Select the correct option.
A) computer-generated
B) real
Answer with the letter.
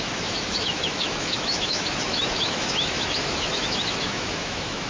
A